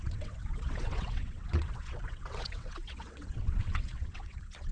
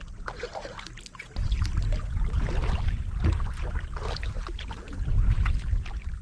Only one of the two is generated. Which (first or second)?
first